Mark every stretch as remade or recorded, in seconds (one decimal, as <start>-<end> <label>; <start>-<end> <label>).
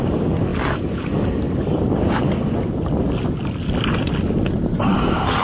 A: 0.0-5.4 recorded